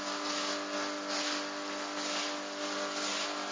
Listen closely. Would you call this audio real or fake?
real